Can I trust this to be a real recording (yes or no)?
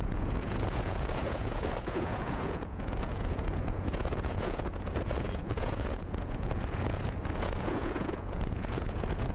no